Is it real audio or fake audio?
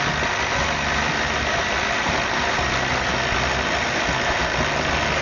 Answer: real